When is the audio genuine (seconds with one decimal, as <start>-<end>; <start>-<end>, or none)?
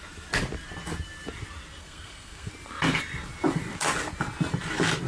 0.0-1.8; 2.5-5.1